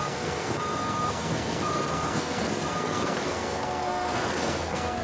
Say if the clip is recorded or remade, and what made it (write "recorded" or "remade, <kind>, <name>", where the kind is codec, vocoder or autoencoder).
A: remade, codec, SNAC